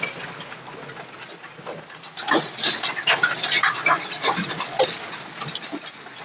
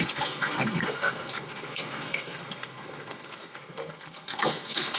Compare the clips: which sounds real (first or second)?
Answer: first